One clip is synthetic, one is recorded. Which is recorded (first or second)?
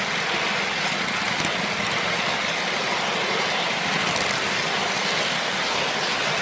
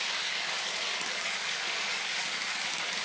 first